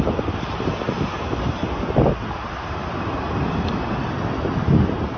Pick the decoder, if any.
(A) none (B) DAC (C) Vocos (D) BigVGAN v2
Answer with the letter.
A